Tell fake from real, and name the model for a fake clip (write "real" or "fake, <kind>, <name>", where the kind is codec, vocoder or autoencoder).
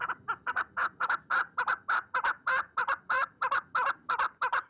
fake, vocoder, BigVGAN v2